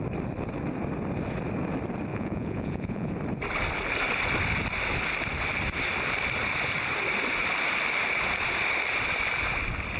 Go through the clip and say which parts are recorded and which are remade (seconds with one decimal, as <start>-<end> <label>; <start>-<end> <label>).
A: 0.0-2.1 recorded; 2.1-3.1 remade; 3.1-10.0 recorded